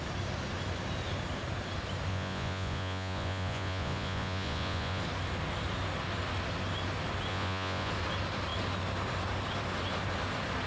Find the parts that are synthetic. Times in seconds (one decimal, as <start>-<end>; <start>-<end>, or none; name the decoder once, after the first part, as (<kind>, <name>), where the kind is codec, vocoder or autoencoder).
2.1-5.0 (vocoder, Vocos); 7.3-7.9

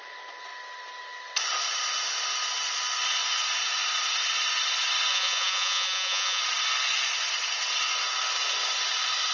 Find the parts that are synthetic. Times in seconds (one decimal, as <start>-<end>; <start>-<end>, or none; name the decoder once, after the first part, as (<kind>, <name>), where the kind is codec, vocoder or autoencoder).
5.1-6.4 (vocoder, Vocos)

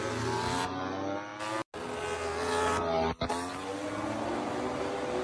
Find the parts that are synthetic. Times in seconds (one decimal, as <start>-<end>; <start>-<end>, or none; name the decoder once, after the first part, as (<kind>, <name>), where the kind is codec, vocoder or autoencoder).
none

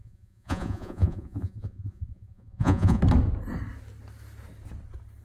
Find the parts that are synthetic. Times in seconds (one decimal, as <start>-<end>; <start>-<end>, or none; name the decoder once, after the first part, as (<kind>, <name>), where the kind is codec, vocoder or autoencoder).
0.0-3.0 (vocoder, Vocos)

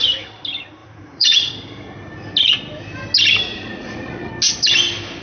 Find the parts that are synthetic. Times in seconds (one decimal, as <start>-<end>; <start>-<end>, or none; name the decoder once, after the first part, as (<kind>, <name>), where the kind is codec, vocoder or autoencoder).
0.8-1.5 (vocoder, Vocos); 3.5-4.3

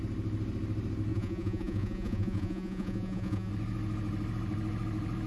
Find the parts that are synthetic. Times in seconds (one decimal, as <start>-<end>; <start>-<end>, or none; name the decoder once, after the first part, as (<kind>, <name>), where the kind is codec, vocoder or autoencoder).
1.1-3.5 (vocoder, Vocos)

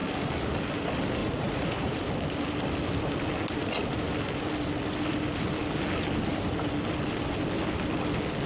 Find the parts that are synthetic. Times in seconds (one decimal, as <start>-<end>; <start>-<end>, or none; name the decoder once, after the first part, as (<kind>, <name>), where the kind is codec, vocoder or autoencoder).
1.2-2.0 (vocoder, Vocos)

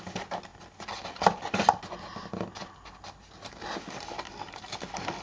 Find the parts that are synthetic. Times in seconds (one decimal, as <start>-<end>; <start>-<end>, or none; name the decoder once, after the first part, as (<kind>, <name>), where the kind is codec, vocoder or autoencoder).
none